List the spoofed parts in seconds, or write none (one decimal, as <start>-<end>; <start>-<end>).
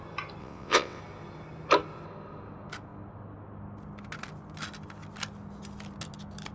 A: 0.4-1.0